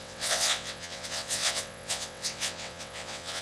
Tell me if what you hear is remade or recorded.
remade